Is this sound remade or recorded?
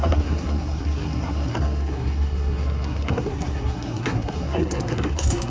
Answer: remade